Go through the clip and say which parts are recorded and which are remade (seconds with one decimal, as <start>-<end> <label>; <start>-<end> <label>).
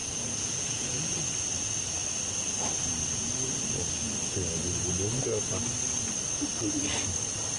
0.0-1.2 remade; 1.2-7.6 recorded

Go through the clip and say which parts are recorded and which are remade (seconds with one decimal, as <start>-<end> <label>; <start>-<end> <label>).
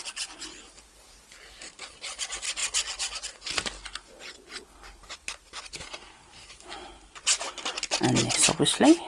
0.0-9.1 recorded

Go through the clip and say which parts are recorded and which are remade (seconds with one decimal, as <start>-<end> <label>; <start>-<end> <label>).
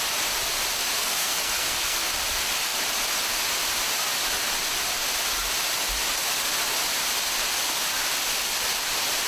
0.0-1.0 recorded; 1.0-2.1 remade; 2.1-9.3 recorded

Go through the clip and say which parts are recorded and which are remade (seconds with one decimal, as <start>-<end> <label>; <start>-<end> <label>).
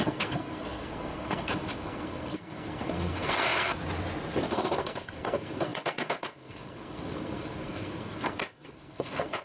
0.0-3.8 remade; 3.8-4.5 recorded; 4.5-9.4 remade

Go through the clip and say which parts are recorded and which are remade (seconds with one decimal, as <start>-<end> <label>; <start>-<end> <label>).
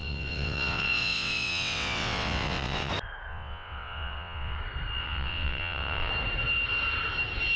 0.0-2.9 remade; 2.9-3.3 recorded; 3.3-4.6 remade; 4.6-5.0 recorded; 5.0-6.1 remade; 6.1-7.6 recorded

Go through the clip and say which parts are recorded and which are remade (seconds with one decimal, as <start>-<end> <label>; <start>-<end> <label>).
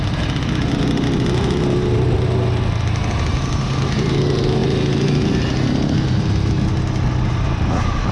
0.0-8.1 recorded